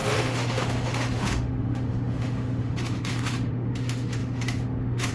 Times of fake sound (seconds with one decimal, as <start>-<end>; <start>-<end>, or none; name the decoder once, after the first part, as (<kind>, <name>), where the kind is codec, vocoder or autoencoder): 0.0-5.1 (autoencoder, DAC-VAE)